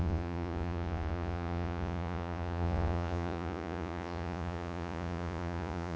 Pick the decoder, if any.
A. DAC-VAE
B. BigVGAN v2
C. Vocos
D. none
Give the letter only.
C